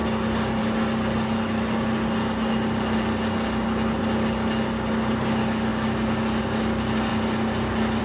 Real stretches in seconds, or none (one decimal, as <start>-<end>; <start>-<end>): 0.0-8.0